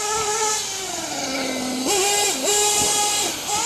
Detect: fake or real real